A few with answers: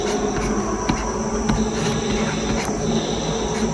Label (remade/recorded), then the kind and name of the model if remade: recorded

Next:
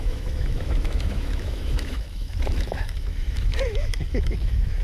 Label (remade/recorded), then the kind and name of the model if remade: remade, autoencoder, DAC-VAE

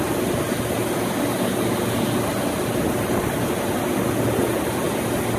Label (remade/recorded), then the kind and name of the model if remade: recorded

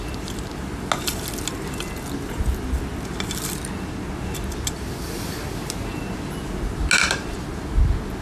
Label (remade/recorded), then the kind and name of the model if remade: recorded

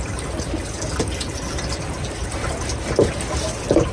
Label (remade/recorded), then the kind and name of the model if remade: recorded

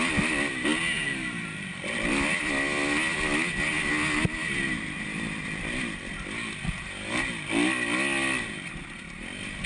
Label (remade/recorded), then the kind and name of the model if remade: recorded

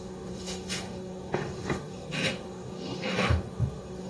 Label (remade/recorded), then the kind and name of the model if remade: remade, autoencoder, DAC-VAE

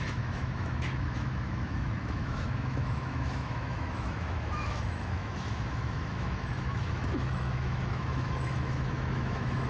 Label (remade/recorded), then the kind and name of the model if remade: remade, autoencoder, DAC-VAE